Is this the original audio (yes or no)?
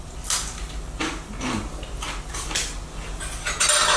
yes